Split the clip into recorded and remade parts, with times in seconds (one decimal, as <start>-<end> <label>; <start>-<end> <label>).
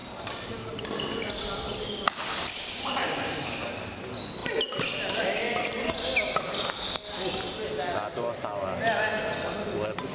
0.0-10.1 recorded